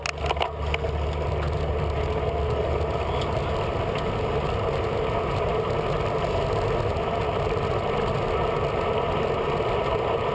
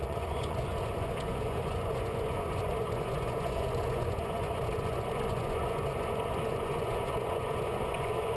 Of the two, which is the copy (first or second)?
second